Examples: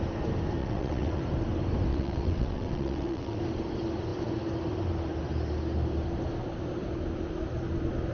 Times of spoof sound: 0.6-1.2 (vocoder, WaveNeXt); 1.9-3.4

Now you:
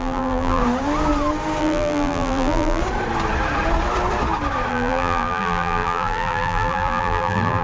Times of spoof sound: 0.0-0.6 (vocoder, BigVGAN v2); 1.6-2.8; 4.7-7.6